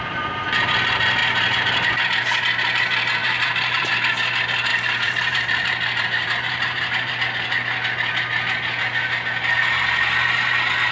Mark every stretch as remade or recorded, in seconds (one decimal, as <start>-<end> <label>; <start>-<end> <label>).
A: 0.0-3.2 recorded; 3.2-3.9 remade; 3.9-4.7 recorded; 4.7-7.1 remade; 7.1-10.9 recorded